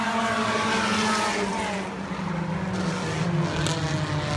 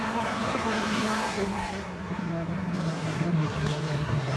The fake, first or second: second